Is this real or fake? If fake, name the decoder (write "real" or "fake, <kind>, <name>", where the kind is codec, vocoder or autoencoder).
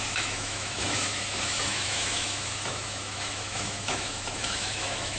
fake, autoencoder, DAC-VAE